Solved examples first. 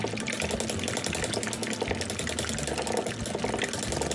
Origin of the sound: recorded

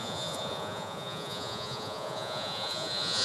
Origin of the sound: remade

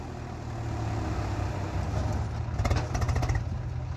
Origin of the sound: recorded